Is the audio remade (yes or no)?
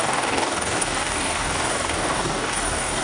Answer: yes